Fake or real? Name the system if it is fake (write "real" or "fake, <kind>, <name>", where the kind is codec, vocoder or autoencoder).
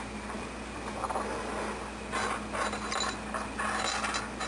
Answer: real